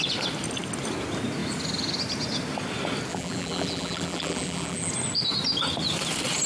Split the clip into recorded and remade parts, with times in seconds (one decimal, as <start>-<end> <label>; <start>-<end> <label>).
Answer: 0.0-3.1 recorded; 3.1-4.9 remade; 4.9-6.5 recorded